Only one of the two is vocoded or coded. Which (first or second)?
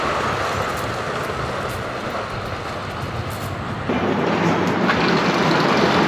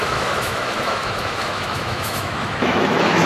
second